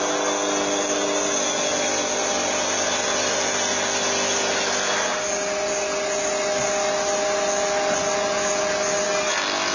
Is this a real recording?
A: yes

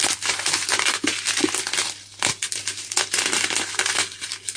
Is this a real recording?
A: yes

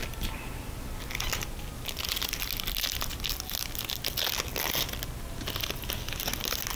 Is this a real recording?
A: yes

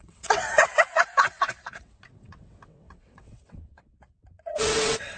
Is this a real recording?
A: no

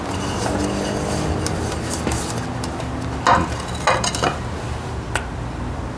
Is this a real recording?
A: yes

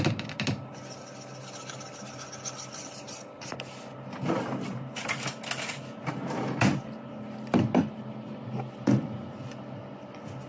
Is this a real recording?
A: yes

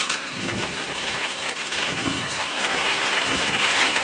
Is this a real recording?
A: no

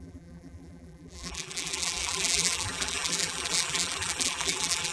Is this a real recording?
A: no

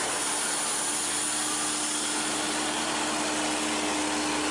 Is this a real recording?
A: yes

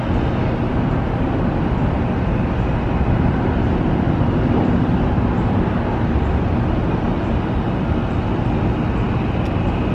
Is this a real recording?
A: yes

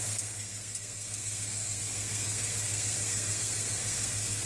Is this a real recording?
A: no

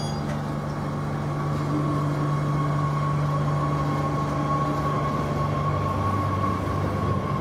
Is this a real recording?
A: yes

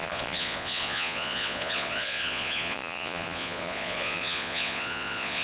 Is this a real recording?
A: no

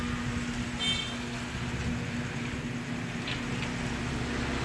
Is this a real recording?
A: yes